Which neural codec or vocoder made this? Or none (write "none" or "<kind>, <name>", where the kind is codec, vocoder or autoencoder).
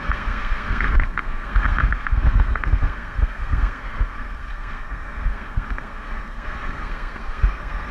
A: codec, SNAC